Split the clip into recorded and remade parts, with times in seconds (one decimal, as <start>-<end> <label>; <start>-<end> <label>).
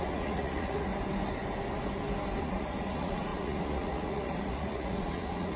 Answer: 0.0-0.9 remade; 0.9-2.4 recorded; 2.4-5.6 remade